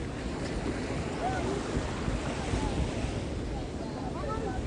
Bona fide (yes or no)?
yes